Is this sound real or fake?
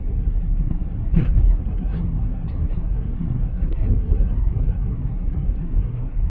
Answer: fake